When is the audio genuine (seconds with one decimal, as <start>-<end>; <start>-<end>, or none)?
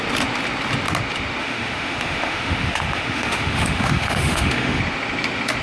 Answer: 0.0-1.4; 4.8-5.6